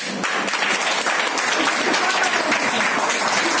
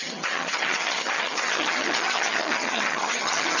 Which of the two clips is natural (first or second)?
first